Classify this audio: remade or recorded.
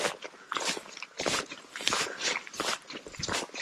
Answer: recorded